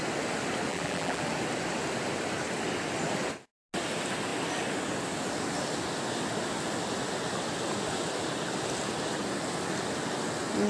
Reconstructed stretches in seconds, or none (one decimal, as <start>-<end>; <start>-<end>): 0.7-1.2